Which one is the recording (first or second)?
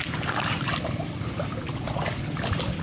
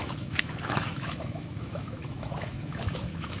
first